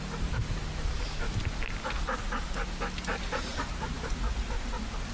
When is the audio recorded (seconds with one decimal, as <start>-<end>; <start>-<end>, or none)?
0.0-3.5; 4.1-5.1